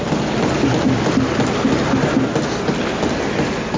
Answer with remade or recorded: recorded